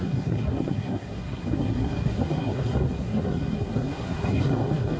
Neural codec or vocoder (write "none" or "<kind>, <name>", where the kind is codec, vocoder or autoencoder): codec, SNAC